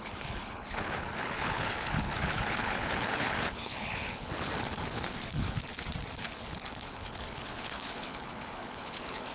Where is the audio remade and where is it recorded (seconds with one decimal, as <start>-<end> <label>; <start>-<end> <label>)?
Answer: 0.0-5.7 remade; 5.7-6.2 recorded; 6.2-9.3 remade